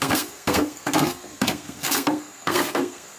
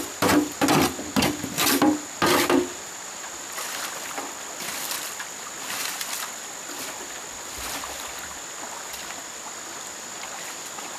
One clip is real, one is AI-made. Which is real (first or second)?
second